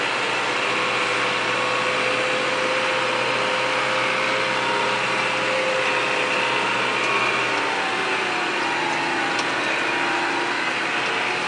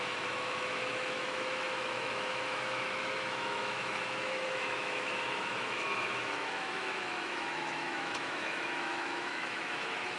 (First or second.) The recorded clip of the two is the first